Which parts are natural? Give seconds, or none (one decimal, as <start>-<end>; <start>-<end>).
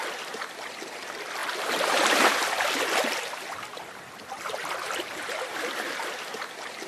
none